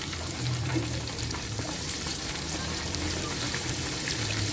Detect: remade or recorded remade